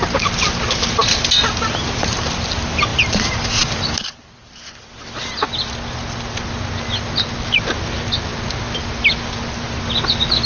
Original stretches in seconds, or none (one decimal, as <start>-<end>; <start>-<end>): 0.0-2.9; 5.7-10.5